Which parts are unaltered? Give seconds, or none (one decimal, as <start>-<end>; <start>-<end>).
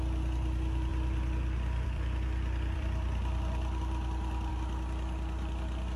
0.0-0.9; 4.5-6.0